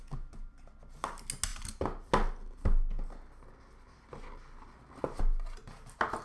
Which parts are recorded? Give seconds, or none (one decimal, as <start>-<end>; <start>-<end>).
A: 0.0-6.2